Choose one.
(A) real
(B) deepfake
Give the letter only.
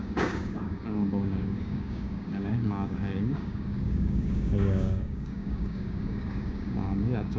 B